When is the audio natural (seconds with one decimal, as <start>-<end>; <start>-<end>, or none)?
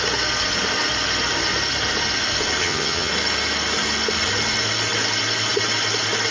0.0-2.6; 3.1-6.3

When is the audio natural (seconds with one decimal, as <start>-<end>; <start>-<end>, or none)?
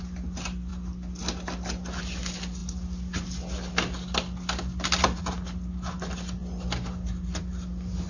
0.0-8.1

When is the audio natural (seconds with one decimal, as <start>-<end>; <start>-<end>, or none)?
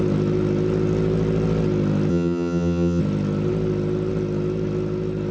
0.0-2.1; 3.0-5.3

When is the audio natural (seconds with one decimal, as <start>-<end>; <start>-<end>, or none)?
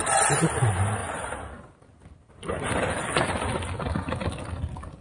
0.0-5.0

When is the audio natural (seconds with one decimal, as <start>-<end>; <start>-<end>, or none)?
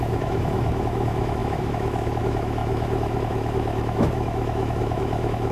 none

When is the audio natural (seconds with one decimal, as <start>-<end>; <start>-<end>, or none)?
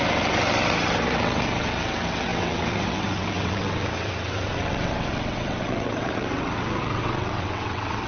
none